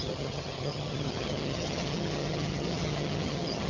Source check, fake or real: fake